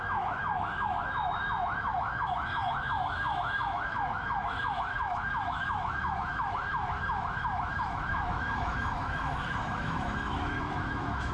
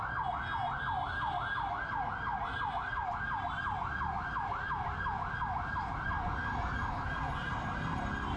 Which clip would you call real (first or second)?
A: second